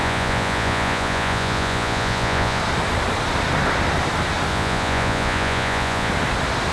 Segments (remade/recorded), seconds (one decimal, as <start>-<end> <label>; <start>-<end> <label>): 0.0-2.6 remade; 2.6-4.5 recorded; 4.5-6.1 remade; 6.1-6.7 recorded